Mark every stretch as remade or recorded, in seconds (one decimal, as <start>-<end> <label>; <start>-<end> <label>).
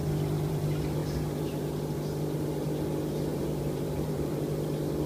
0.0-3.3 recorded; 3.3-4.3 remade; 4.3-5.1 recorded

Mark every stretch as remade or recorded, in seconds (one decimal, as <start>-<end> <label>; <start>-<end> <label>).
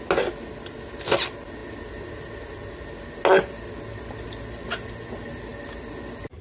0.0-6.4 recorded